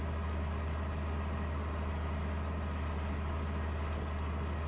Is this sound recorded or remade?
recorded